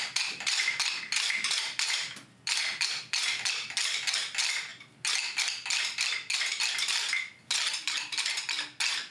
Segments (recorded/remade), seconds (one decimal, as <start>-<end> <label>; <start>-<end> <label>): 0.0-9.1 recorded